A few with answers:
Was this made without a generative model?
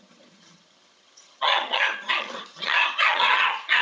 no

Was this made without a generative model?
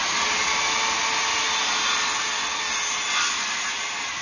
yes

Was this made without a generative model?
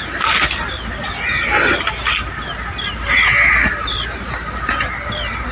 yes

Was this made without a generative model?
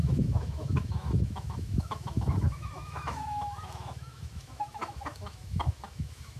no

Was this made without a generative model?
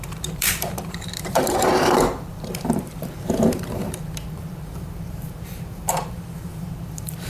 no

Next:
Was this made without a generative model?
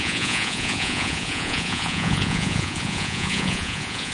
no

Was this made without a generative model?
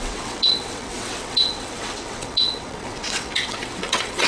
no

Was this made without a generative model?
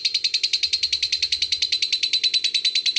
yes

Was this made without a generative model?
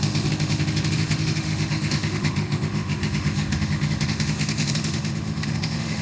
no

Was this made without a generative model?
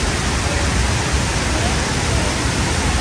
no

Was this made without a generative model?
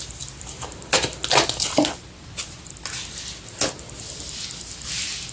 yes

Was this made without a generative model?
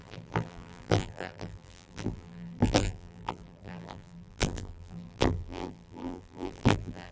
no